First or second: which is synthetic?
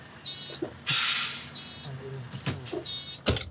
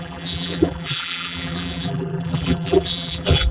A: second